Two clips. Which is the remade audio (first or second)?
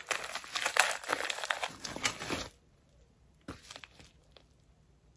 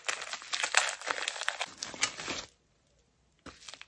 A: first